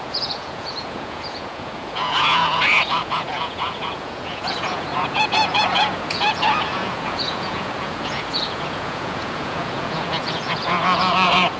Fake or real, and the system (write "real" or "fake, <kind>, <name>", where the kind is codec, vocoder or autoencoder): fake, vocoder, Vocos